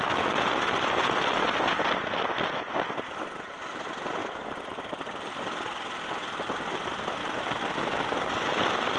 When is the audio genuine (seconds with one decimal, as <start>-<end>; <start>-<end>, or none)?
0.0-4.2; 5.0-9.0